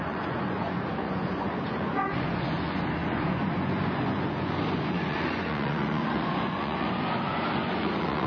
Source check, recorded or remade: remade